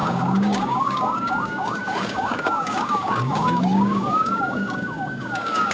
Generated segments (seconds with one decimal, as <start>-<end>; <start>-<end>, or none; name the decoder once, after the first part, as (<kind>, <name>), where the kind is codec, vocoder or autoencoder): 0.0-5.7 (codec, DAC)